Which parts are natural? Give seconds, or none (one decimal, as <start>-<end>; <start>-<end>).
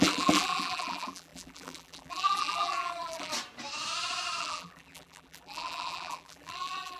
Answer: 3.3-4.4